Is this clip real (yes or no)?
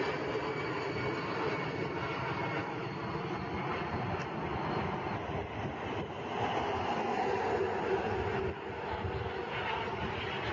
yes